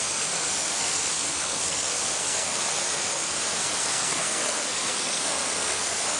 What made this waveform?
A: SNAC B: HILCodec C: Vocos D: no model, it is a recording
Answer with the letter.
A